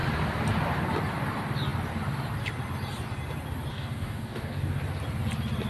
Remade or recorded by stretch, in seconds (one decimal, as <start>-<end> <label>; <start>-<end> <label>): 0.0-3.7 recorded; 3.7-4.8 remade; 4.8-5.7 recorded

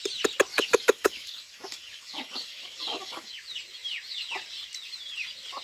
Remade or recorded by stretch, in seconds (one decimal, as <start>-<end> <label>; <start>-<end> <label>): 0.0-0.5 recorded; 0.5-3.3 remade; 3.3-5.6 recorded

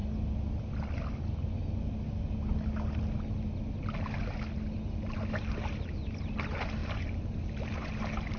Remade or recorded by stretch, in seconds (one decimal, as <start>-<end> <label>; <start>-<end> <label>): 0.0-8.4 recorded

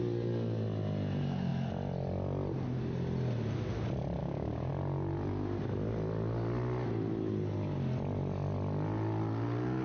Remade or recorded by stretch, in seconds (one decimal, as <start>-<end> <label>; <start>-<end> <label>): 0.0-4.2 recorded; 4.2-4.7 remade; 4.7-9.8 recorded

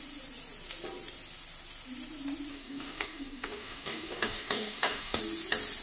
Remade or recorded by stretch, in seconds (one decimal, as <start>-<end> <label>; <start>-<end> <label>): 0.0-2.5 recorded; 2.5-5.2 remade; 5.2-5.8 recorded